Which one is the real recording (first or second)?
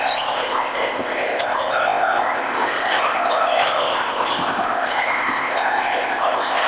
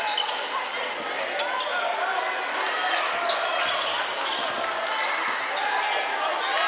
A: second